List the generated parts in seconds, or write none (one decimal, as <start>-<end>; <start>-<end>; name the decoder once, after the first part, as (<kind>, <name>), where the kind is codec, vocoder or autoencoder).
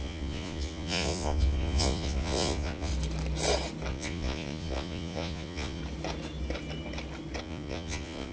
0.0-2.9 (vocoder, Vocos); 3.9-5.8; 7.4-8.3